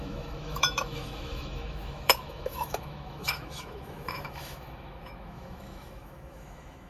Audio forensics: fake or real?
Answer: fake